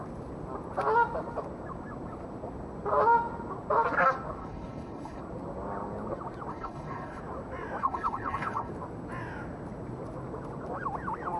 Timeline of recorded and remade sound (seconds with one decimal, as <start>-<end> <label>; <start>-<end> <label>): 0.0-4.4 recorded; 4.4-5.2 remade; 5.2-6.5 recorded; 6.5-7.2 remade; 7.2-7.8 recorded; 7.8-8.7 remade; 8.7-11.4 recorded